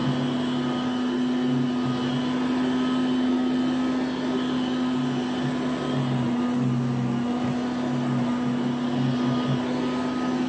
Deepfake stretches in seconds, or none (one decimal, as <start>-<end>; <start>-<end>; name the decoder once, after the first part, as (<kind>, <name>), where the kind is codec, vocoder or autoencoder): none